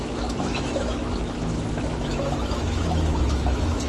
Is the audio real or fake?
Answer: fake